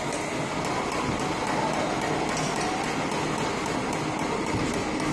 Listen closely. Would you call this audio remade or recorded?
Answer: recorded